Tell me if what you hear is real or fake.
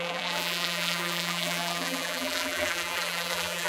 fake